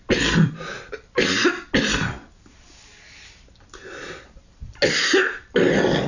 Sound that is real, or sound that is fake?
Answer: real